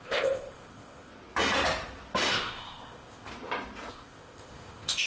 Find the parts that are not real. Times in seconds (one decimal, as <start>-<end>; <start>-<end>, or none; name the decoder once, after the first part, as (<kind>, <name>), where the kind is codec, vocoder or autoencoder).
0.0-1.1 (codec, ZipCodec); 2.3-3.3; 3.9-5.1